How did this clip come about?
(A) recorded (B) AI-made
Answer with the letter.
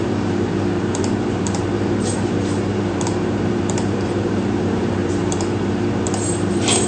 B